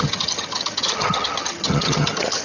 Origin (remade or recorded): remade